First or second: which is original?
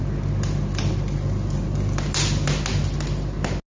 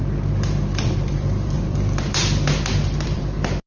first